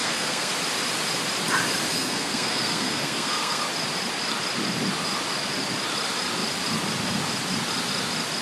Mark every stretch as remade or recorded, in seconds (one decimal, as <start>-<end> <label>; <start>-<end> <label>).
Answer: 0.0-0.5 remade; 0.5-1.9 recorded; 1.9-3.6 remade; 3.6-8.4 recorded